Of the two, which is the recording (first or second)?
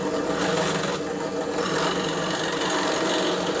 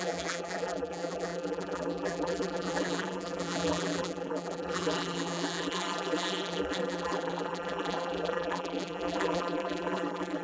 first